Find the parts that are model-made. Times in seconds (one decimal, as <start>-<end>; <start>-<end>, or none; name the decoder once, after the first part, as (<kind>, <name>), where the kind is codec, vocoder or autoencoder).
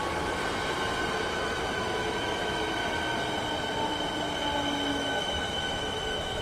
0.0-0.4 (autoencoder, DAC-VAE); 1.2-2.8; 4.9-6.4